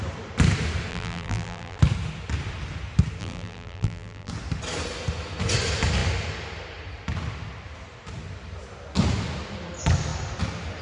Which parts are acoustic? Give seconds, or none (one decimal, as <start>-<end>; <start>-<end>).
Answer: 0.0-0.9; 1.8-3.2; 4.3-10.8